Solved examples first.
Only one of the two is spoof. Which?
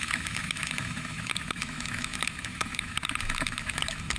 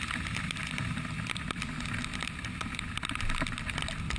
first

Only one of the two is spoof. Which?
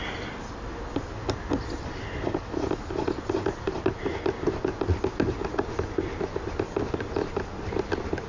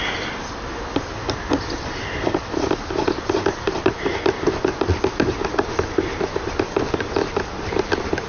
second